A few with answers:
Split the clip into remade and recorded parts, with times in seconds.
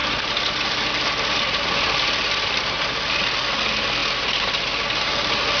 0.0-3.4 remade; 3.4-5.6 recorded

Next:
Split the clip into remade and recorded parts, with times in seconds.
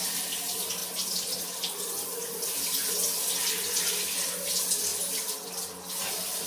0.0-6.5 recorded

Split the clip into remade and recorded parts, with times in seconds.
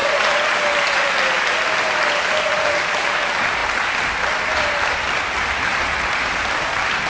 0.0-5.7 recorded; 5.7-6.5 remade; 6.5-7.1 recorded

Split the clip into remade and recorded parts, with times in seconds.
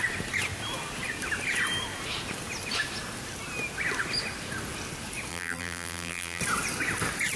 0.0-5.3 recorded; 5.3-6.4 remade; 6.4-7.4 recorded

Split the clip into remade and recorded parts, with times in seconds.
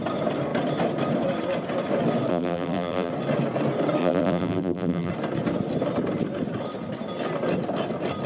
0.0-2.3 recorded; 2.3-3.1 remade; 3.1-4.0 recorded; 4.0-5.1 remade; 5.1-8.3 recorded